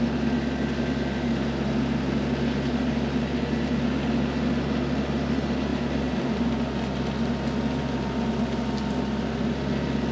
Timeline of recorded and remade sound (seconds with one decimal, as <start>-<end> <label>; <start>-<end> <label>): 0.0-10.1 recorded